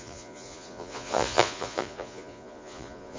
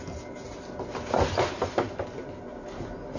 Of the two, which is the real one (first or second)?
second